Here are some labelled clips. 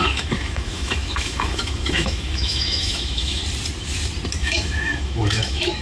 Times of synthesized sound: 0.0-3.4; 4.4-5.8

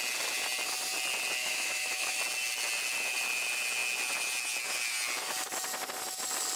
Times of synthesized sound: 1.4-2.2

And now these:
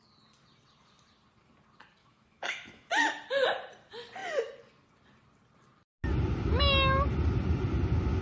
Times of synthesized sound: 2.0-2.9